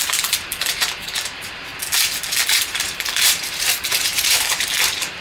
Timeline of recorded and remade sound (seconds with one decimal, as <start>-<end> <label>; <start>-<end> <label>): 0.0-1.7 remade; 1.7-2.5 recorded; 2.5-5.2 remade